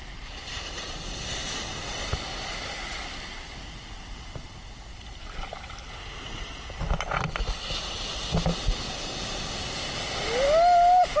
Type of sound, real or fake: real